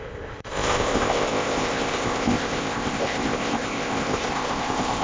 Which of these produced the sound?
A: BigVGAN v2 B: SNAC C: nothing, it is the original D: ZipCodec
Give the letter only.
D